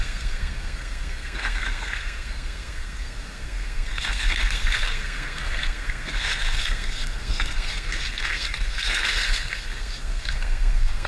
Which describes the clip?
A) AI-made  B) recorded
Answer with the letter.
A